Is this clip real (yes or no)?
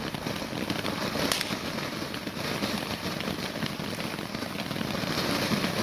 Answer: yes